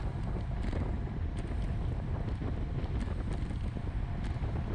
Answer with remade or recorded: recorded